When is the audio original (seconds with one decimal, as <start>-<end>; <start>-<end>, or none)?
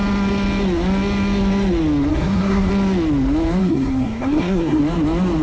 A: 0.0-2.1; 2.7-3.6; 4.8-5.4